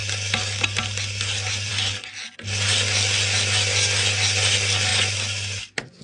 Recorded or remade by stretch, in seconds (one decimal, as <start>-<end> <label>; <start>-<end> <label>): 0.0-6.0 recorded